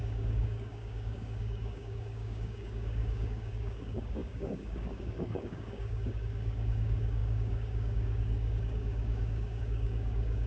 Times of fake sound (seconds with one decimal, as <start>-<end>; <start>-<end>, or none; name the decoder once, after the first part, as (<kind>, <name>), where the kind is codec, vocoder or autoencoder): 0.0-10.5 (codec, DAC)